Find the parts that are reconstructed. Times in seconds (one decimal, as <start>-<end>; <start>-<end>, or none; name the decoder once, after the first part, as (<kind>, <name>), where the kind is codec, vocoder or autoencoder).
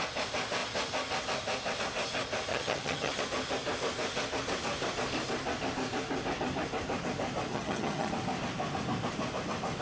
2.5-3.2 (vocoder, HiFi-GAN); 7.5-8.1